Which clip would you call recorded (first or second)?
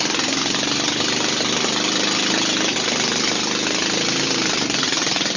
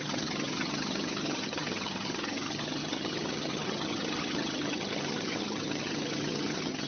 first